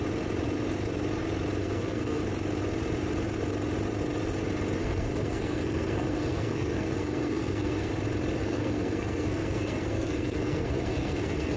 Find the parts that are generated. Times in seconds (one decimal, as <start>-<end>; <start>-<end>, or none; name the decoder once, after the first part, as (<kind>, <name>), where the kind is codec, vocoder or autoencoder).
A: 1.6-2.2 (codec, SNAC); 4.8-7.9; 8.4-11.6